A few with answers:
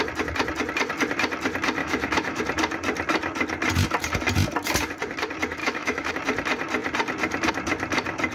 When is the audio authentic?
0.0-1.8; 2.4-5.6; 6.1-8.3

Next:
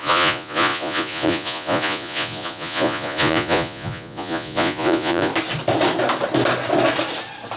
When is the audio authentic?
5.3-7.6

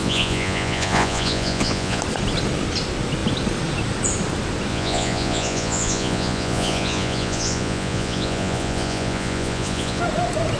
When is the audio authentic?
2.0-4.7; 10.0-10.6

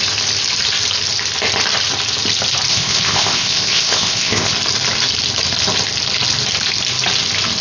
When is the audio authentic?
0.0-2.7; 4.5-7.6

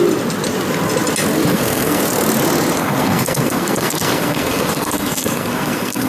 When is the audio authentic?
0.0-1.5; 2.0-2.8

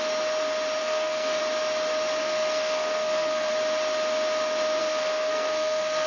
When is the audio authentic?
0.0-0.8; 1.4-2.2; 3.5-4.8